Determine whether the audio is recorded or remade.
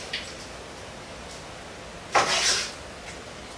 recorded